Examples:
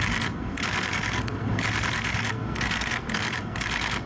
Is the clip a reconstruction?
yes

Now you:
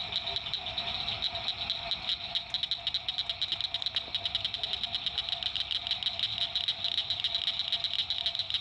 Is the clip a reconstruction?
no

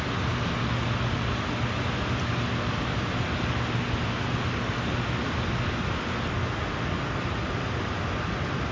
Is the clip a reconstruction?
no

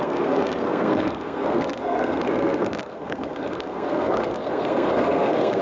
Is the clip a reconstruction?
yes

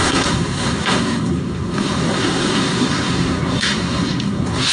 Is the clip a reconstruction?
yes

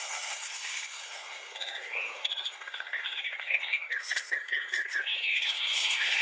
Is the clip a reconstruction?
yes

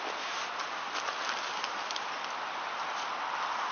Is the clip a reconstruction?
no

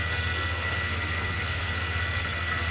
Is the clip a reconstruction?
yes